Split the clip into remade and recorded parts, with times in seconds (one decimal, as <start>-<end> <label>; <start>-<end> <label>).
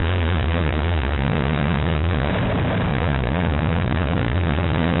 0.0-2.3 remade; 2.3-2.9 recorded; 2.9-5.0 remade